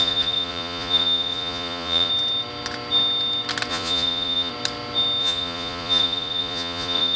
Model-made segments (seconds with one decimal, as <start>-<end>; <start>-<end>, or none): 0.0-2.1; 3.7-4.5; 5.2-7.2